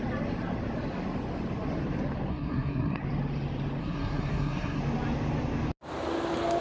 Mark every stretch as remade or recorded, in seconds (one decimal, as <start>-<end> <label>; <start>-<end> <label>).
0.0-2.3 recorded; 2.3-3.0 remade; 3.0-3.8 recorded; 3.8-4.8 remade; 4.8-6.6 recorded